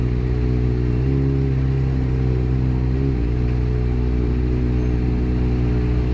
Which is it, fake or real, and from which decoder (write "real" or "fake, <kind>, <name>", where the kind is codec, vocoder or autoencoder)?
real